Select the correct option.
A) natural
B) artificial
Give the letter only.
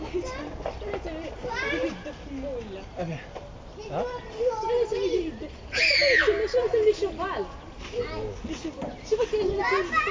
A